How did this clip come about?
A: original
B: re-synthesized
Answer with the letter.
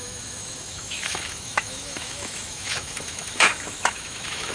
B